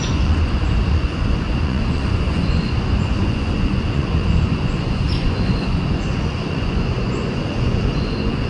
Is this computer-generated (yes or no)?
yes